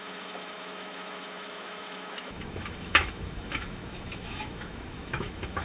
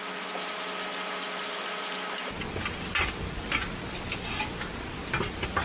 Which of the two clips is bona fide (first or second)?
second